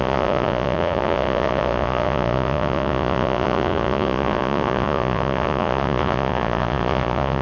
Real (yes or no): no